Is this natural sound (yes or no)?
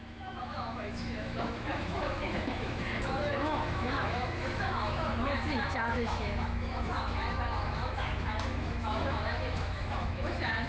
no